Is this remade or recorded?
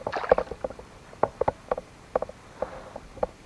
recorded